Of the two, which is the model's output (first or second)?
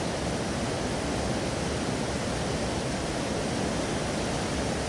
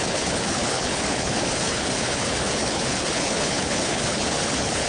second